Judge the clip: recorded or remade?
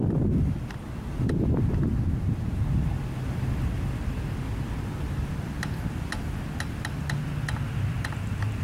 recorded